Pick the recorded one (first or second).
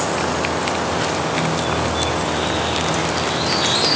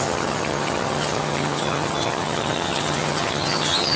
first